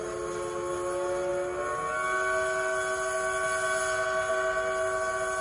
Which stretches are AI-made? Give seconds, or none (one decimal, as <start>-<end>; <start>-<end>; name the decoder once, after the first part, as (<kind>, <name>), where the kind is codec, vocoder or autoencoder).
none